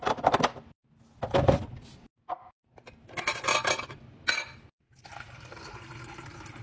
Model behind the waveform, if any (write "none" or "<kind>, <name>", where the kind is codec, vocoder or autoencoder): none